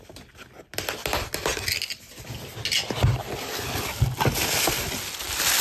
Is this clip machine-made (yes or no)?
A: no